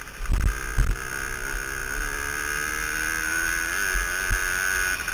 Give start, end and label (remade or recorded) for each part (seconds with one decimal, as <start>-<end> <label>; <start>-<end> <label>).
0.0-5.1 recorded